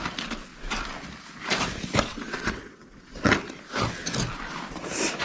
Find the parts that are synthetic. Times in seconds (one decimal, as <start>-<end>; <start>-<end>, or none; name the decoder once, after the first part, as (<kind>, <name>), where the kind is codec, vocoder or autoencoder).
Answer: 2.1-3.3 (vocoder, WaveNeXt)